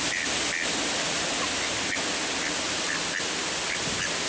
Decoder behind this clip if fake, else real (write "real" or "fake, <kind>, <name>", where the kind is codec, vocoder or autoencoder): real